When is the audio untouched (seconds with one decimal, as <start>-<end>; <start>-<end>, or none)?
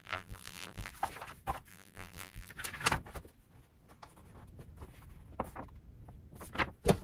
0.9-1.7; 2.5-7.0